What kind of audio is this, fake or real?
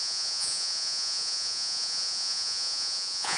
fake